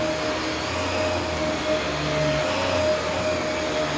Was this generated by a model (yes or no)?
no